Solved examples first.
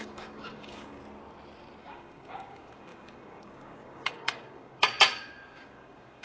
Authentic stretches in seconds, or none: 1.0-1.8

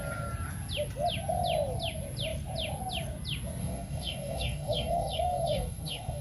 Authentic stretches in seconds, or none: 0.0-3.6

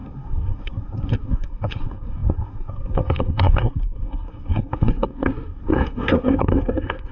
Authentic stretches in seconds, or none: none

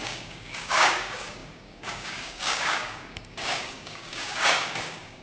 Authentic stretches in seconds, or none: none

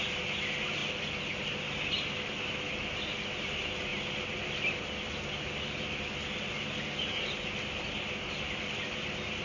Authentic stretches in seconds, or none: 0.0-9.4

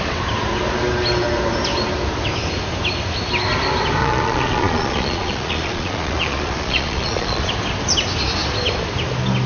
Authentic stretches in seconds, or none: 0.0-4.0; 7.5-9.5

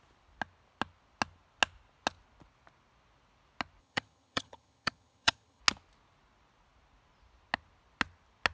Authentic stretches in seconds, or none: 0.0-3.8; 5.6-8.5

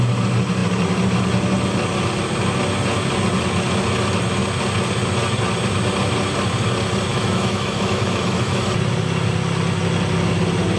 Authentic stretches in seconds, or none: 0.0-7.1; 8.6-10.8